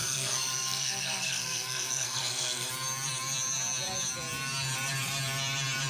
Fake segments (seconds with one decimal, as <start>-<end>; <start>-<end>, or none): 0.0-2.7